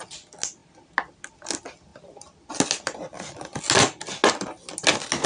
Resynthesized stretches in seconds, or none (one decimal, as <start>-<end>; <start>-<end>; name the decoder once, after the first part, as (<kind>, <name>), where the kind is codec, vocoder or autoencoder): none